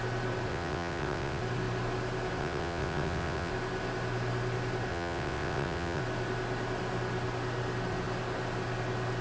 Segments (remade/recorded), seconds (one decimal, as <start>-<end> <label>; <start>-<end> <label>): 0.0-0.5 recorded; 0.5-1.4 remade; 1.4-2.4 recorded; 2.4-3.5 remade; 3.5-4.9 recorded; 4.9-6.0 remade; 6.0-9.2 recorded